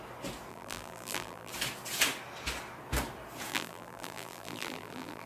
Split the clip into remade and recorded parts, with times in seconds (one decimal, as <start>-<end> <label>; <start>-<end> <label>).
0.0-0.5 recorded; 0.5-1.5 remade; 1.5-3.5 recorded; 3.5-5.3 remade